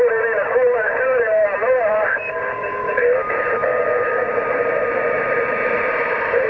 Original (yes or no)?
no